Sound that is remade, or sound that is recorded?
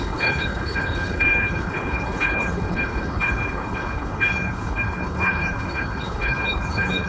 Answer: remade